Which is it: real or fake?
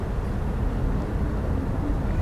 real